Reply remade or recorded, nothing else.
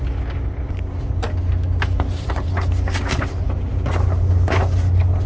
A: recorded